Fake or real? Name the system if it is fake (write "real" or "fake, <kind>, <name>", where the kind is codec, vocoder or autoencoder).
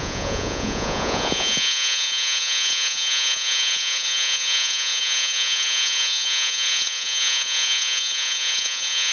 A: fake, vocoder, Vocos